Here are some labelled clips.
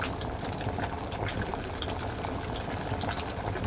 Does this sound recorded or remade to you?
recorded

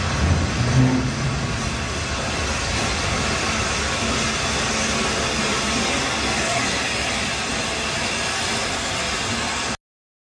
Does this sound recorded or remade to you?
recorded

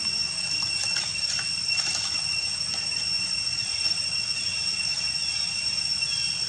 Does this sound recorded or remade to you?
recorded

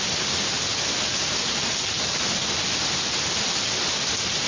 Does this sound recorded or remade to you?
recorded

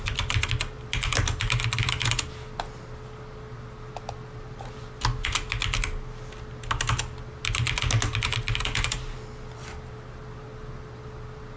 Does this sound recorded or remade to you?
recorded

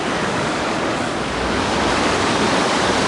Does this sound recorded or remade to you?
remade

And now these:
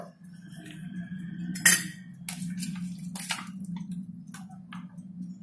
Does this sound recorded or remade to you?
recorded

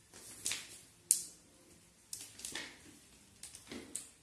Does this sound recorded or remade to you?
recorded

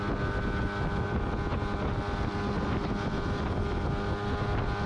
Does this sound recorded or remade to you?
recorded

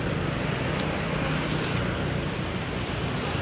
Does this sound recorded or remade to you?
recorded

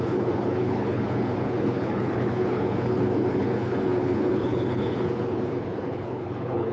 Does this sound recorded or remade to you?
remade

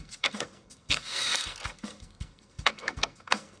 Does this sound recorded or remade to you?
remade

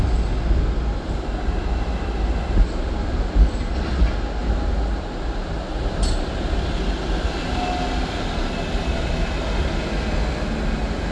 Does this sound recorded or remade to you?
recorded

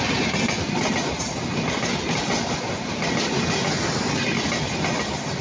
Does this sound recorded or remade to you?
recorded